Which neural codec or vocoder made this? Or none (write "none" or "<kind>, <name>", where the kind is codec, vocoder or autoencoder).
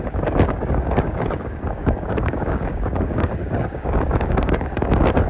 codec, DAC